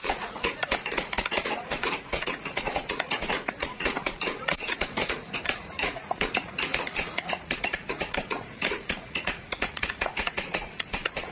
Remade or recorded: remade